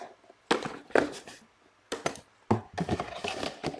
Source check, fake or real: real